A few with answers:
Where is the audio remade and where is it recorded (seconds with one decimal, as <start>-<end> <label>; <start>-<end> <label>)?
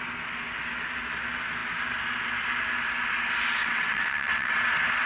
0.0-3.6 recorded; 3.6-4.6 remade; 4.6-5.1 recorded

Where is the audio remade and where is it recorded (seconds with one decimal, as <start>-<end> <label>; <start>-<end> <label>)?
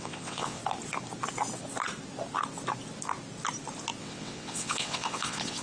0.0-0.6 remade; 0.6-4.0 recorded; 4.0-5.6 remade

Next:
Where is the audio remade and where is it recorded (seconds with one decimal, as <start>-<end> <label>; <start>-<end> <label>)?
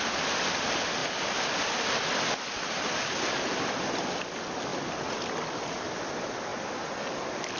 0.0-7.6 recorded